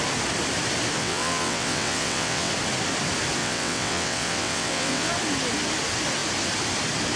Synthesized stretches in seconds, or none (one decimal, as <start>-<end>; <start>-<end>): 1.0-2.5; 3.4-5.1